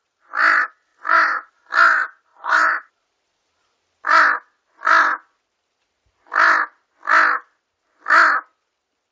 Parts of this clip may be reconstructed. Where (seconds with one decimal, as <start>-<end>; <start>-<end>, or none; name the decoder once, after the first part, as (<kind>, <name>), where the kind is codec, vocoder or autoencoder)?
0.9-1.7 (vocoder, BigVGAN v2); 2.3-2.9